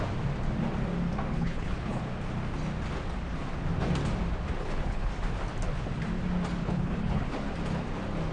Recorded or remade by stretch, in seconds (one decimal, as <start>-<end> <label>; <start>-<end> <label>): 0.0-1.3 recorded; 1.3-2.0 remade; 2.0-4.6 recorded; 4.6-5.1 remade; 5.1-6.6 recorded; 6.6-7.3 remade; 7.3-8.3 recorded